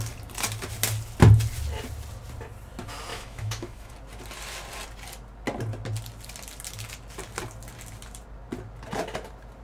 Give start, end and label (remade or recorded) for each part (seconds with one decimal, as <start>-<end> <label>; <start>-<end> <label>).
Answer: 0.0-3.1 recorded; 3.1-3.9 remade; 3.9-9.6 recorded